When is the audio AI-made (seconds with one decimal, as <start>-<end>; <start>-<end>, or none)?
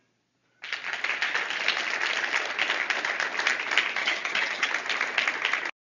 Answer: 4.0-4.7